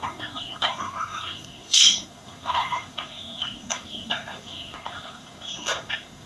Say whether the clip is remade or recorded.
remade